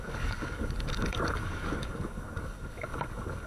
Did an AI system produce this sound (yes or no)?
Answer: yes